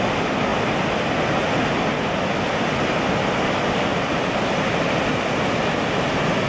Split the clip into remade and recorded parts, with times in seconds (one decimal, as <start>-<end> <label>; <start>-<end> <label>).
0.0-0.5 recorded; 0.5-3.5 remade; 3.5-3.9 recorded; 3.9-5.1 remade; 5.1-6.5 recorded